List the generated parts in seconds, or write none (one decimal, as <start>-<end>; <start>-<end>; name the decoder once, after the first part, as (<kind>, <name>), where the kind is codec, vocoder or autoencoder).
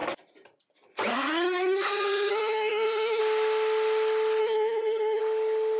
1.1-3.2 (codec, SNAC); 4.4-5.2